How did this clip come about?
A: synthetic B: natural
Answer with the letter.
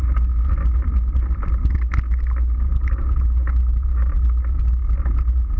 B